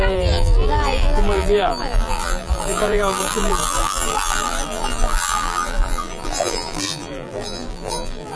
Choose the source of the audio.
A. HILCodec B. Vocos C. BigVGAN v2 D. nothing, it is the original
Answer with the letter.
C